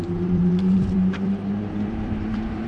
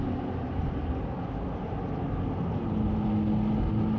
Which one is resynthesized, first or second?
first